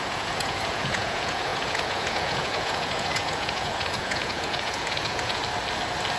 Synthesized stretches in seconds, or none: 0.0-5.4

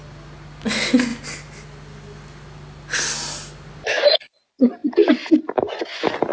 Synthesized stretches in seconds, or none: none

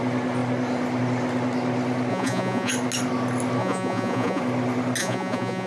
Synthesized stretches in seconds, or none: 2.1-2.7; 3.6-4.4; 5.0-5.7

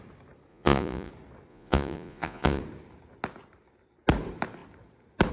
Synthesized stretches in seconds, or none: 0.5-1.1; 1.5-2.6